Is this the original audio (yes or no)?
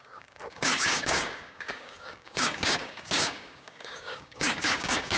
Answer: no